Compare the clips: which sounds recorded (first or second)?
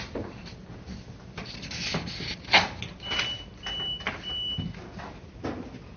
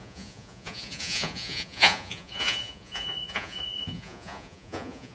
first